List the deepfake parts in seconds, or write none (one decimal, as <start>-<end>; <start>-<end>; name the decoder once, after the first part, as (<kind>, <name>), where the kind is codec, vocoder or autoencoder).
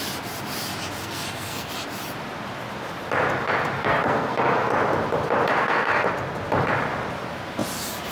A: 1.0-1.7 (codec, SNAC); 3.8-4.7; 5.6-6.1